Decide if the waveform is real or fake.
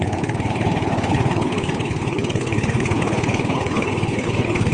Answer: fake